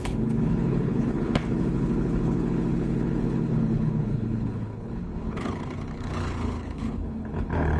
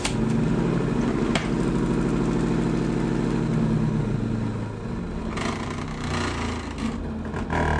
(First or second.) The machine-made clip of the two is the first